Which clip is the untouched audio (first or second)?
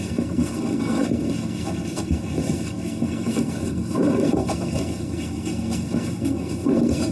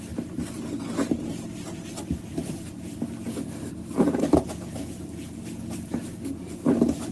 second